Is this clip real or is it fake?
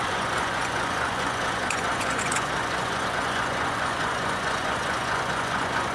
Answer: fake